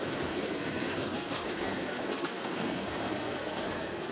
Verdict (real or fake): fake